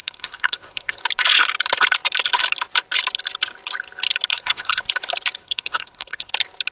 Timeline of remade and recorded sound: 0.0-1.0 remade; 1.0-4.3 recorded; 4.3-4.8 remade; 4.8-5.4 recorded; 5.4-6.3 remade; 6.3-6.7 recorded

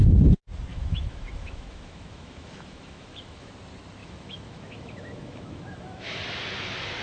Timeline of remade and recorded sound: 0.0-0.7 recorded; 0.7-3.5 remade; 3.5-4.0 recorded; 4.0-6.2 remade; 6.2-7.0 recorded

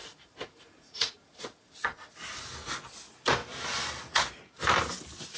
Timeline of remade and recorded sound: 0.0-2.1 remade; 2.1-5.4 recorded

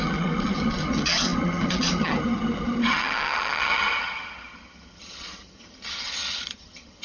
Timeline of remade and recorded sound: 0.0-7.0 remade

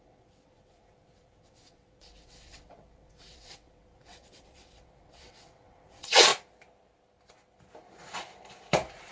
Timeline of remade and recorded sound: 0.0-6.3 remade; 6.3-9.1 recorded

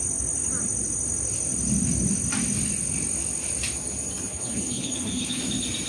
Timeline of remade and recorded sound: 0.0-4.3 recorded; 4.3-5.4 remade; 5.4-5.9 recorded

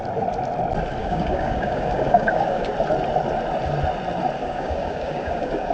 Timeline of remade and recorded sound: 0.0-1.0 recorded; 1.0-2.7 remade; 2.7-4.4 recorded; 4.4-5.7 remade